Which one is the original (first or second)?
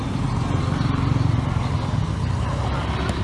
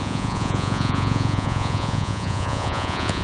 first